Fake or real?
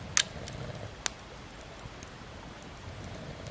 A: real